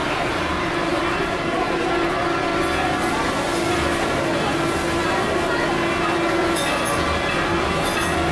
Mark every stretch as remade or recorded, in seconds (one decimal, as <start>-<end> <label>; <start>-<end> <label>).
0.0-1.6 remade; 1.6-8.3 recorded